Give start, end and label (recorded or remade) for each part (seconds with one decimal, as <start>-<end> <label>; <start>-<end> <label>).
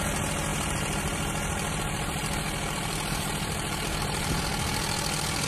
0.0-0.5 recorded; 0.5-3.8 remade; 3.8-5.5 recorded